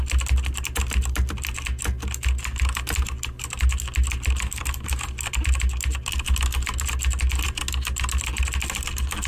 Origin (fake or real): real